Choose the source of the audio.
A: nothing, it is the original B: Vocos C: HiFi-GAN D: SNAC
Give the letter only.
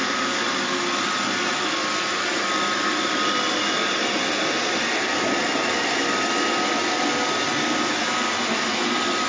A